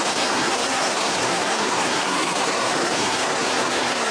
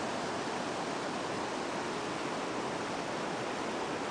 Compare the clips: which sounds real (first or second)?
second